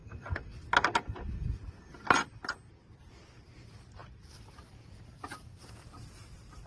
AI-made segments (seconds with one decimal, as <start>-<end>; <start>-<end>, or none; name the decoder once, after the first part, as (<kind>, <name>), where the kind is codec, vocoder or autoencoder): none